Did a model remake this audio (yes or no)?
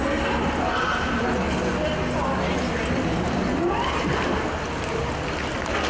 no